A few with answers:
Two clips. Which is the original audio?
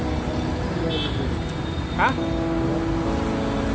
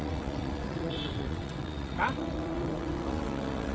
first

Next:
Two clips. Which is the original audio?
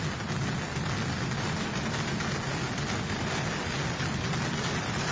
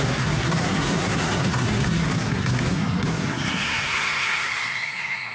first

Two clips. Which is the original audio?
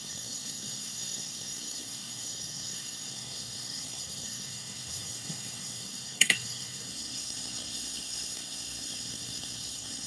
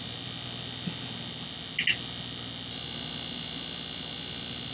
second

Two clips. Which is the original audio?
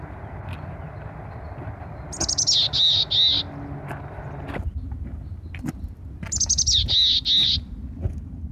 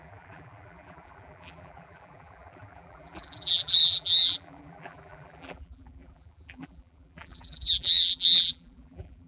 first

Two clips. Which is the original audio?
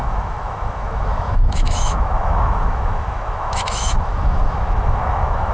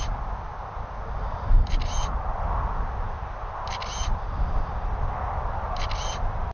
second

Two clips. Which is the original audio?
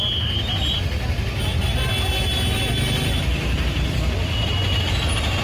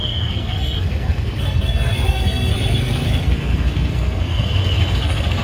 first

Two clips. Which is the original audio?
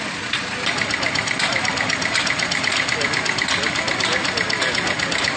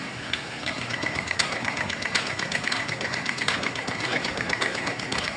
first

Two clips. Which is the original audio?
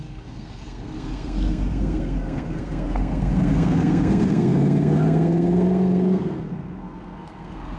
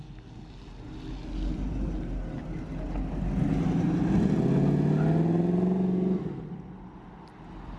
second